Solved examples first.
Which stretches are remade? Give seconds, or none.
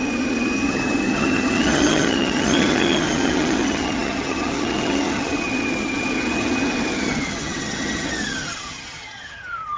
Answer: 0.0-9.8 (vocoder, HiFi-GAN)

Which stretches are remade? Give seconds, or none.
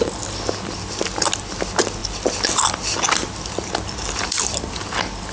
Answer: none